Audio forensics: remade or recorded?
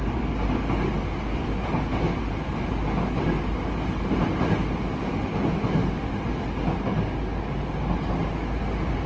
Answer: recorded